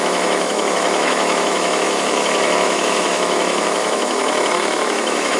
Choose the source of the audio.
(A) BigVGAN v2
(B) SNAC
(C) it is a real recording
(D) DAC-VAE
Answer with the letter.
D